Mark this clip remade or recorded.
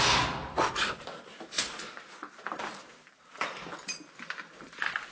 recorded